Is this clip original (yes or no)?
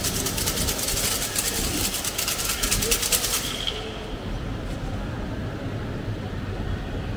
no